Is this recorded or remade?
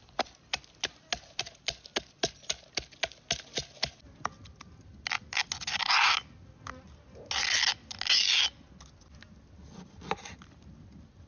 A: recorded